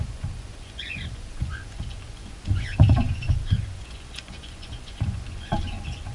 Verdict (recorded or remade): remade